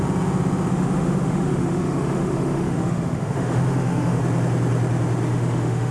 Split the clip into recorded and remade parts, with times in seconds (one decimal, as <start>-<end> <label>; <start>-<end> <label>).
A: 0.0-0.7 recorded; 0.7-4.2 remade; 4.2-5.3 recorded; 5.3-5.9 remade